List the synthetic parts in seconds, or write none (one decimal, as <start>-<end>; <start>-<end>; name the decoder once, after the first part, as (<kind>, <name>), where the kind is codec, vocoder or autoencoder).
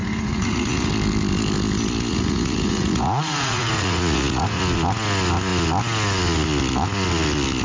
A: 0.0-0.9 (vocoder, Vocos); 2.1-4.6